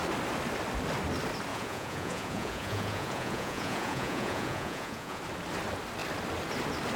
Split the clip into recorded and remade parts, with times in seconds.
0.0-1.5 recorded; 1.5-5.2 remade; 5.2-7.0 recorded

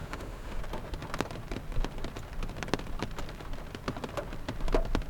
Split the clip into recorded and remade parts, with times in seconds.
0.0-0.6 remade; 0.6-5.1 recorded